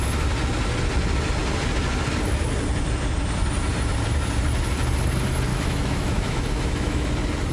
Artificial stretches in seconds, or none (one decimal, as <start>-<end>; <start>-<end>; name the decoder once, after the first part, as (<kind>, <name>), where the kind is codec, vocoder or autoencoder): 5.5-7.1 (autoencoder, DAC-VAE)